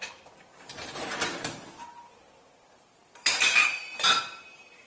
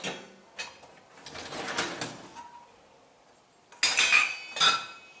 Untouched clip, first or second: second